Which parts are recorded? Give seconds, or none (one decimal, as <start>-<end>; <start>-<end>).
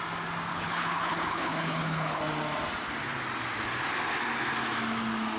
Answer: 0.0-0.5; 2.2-5.4